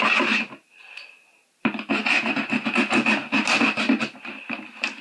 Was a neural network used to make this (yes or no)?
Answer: no